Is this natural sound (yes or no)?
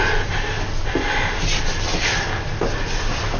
yes